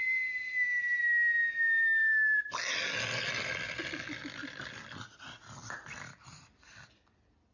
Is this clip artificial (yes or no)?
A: no